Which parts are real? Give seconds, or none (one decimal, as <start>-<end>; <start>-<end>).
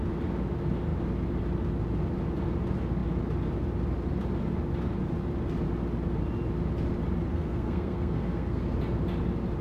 0.0-7.3; 8.6-9.6